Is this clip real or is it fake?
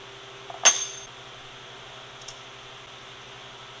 real